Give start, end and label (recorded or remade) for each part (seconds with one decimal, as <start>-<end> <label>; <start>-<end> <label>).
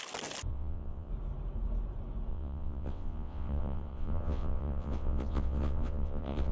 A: 0.0-0.5 recorded; 0.5-1.1 remade; 1.1-2.3 recorded; 2.3-6.5 remade